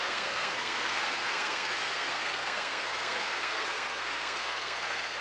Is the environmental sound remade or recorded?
remade